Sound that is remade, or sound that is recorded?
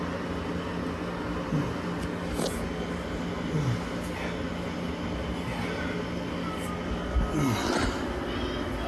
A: recorded